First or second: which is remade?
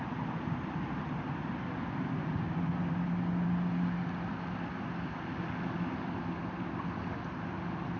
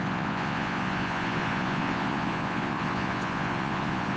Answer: second